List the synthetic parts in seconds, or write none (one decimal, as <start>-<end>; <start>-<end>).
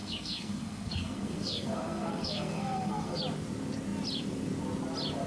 0.0-3.2